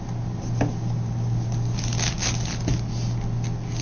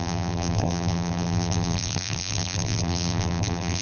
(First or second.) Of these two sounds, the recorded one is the first